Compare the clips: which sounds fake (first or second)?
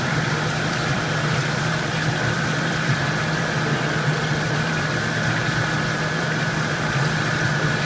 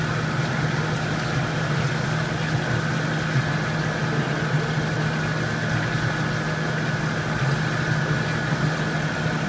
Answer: first